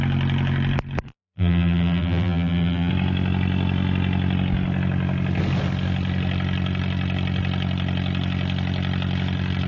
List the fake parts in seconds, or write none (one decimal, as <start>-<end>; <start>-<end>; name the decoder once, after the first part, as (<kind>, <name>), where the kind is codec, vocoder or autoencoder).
1.1-2.9 (vocoder, BigVGAN v2)

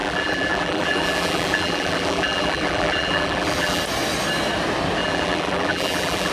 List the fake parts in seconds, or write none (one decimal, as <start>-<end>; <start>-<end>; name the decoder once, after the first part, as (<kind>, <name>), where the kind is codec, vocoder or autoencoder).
0.0-3.8 (vocoder, BigVGAN v2); 5.0-6.3

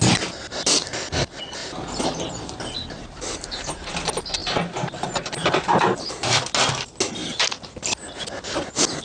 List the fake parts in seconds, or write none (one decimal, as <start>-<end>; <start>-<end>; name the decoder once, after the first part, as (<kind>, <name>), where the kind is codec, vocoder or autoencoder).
1.6-3.9 (vocoder, BigVGAN v2); 4.4-6.1

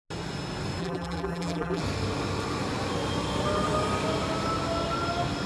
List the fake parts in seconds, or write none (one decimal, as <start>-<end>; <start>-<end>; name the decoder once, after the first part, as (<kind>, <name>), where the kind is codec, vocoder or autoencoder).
0.8-1.8 (vocoder, BigVGAN v2)

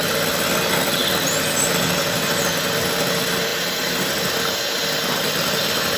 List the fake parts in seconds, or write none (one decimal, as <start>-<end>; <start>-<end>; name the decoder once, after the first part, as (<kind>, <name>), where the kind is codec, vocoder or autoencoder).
3.5-4.1 (vocoder, BigVGAN v2)

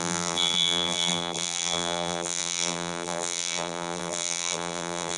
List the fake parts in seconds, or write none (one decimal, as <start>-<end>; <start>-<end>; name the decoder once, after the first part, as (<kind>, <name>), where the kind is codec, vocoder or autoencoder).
0.0-5.2 (vocoder, BigVGAN v2)

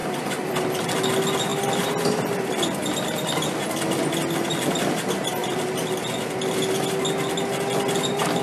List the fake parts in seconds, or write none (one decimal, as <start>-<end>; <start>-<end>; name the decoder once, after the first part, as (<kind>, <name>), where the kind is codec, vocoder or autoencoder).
0.0-0.9 (vocoder, BigVGAN v2); 1.5-3.8; 5.4-6.0